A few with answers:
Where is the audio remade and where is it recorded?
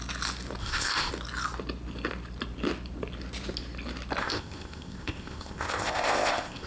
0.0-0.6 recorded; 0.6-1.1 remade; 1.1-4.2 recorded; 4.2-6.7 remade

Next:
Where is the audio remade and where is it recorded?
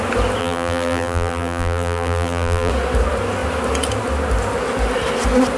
0.0-0.4 recorded; 0.4-2.7 remade; 2.7-5.6 recorded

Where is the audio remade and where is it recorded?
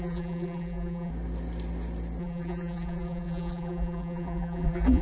0.0-1.1 remade; 1.1-2.2 recorded; 2.2-5.0 remade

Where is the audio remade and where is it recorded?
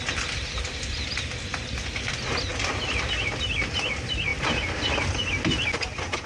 0.0-6.3 recorded